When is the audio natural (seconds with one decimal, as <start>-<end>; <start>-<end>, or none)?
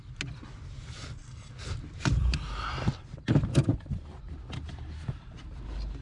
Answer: 0.0-6.0